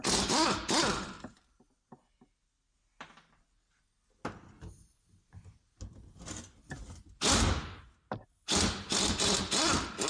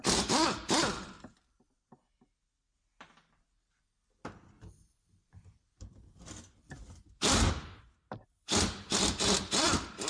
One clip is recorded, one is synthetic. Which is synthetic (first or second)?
second